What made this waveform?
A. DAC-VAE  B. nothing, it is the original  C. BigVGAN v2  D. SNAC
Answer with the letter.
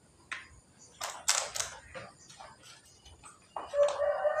B